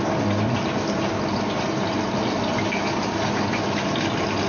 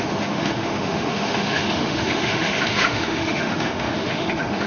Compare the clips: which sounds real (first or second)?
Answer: first